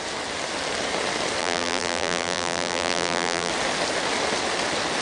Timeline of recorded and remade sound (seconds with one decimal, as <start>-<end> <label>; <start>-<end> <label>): 0.0-1.4 recorded; 1.4-3.5 remade; 3.5-5.0 recorded